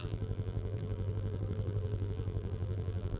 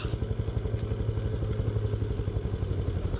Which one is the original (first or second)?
second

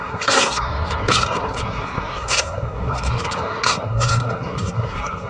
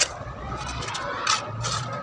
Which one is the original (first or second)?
second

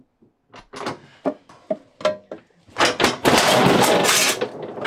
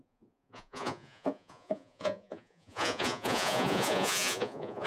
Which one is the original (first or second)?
first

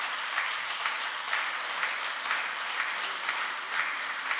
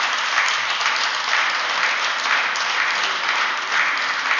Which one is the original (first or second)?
second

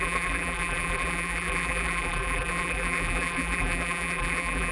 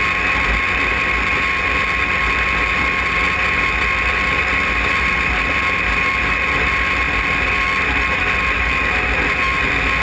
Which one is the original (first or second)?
second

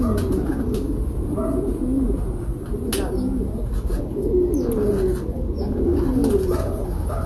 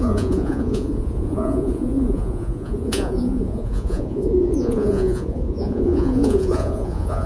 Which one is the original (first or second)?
first